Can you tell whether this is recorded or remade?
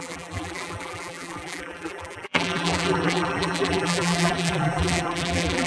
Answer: remade